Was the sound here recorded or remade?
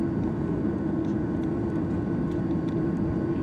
recorded